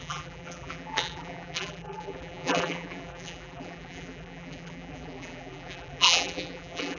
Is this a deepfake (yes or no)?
yes